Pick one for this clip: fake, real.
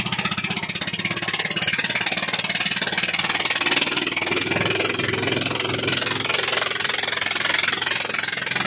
real